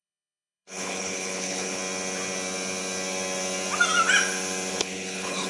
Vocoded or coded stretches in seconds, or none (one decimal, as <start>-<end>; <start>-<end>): 0.0-1.8; 4.7-5.5

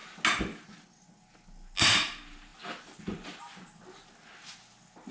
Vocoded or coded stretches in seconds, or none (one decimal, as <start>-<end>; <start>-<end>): none

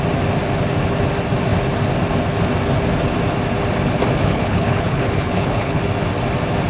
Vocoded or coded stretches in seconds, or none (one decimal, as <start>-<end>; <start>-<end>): 4.2-5.8

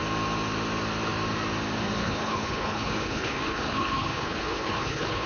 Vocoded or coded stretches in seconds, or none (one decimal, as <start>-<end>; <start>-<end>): 2.0-5.3

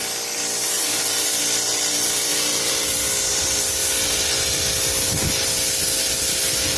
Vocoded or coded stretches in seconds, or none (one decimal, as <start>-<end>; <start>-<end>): none

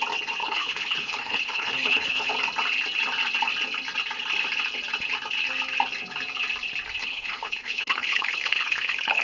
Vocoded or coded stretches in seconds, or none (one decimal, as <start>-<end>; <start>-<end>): 0.4-2.3; 7.0-9.2

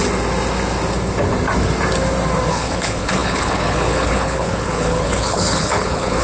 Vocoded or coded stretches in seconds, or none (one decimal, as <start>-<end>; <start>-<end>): 2.5-6.2